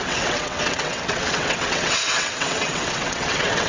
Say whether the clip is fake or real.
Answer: fake